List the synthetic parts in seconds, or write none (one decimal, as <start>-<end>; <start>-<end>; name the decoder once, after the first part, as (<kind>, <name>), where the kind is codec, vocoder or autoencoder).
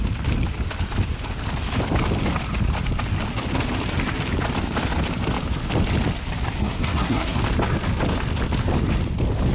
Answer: 6.6-7.4 (codec, SNAC)